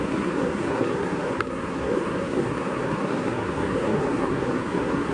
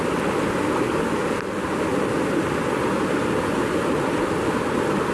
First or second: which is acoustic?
second